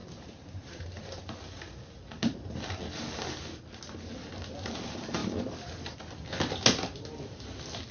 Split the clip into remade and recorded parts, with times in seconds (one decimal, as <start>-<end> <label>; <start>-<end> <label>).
0.0-1.2 remade; 1.2-7.9 recorded